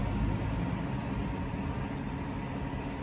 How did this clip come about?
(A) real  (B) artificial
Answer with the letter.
A